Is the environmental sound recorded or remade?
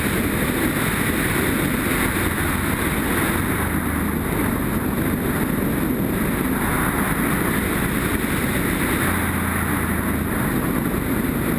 recorded